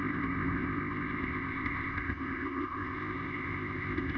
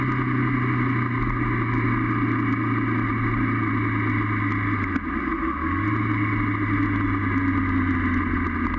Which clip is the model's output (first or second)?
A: first